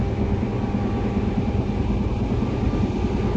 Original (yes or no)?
yes